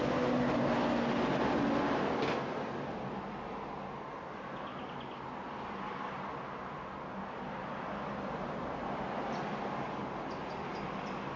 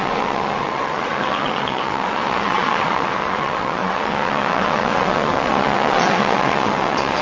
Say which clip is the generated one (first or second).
second